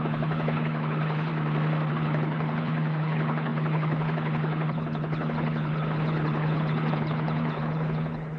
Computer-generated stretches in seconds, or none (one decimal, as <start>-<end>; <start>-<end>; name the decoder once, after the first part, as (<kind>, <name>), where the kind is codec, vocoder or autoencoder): 0.0-1.3 (codec, HILCodec); 1.9-8.4